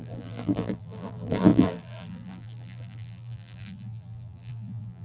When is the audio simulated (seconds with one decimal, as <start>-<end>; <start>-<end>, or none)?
0.0-5.0